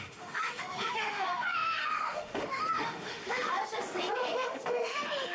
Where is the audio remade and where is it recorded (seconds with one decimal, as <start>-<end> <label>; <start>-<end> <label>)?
0.0-3.6 remade; 3.6-4.2 recorded; 4.2-5.3 remade

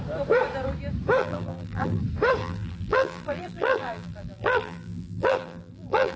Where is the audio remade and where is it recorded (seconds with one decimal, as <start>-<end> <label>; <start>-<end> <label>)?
0.0-1.2 recorded; 1.2-2.0 remade; 2.0-2.4 recorded; 2.4-6.2 remade

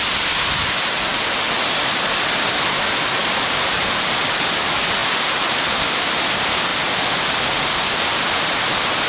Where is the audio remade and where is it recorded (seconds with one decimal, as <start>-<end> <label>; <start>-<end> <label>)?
0.0-6.7 remade; 6.7-8.4 recorded; 8.4-9.1 remade

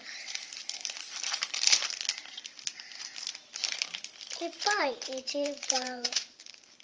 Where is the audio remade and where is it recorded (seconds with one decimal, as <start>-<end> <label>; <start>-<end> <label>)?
0.0-3.6 remade; 3.6-4.8 recorded; 4.8-6.8 remade

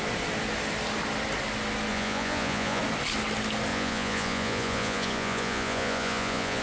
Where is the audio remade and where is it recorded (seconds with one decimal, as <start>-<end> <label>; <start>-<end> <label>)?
0.0-1.9 recorded; 1.9-2.8 remade; 2.8-3.7 recorded; 3.7-6.6 remade

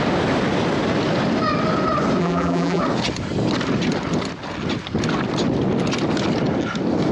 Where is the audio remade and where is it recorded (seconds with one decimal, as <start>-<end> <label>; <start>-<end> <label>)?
0.0-2.2 recorded; 2.2-2.8 remade; 2.8-7.1 recorded